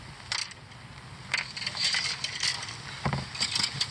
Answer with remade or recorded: recorded